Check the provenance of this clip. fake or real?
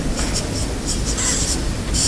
fake